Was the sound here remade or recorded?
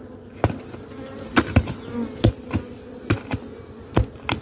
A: recorded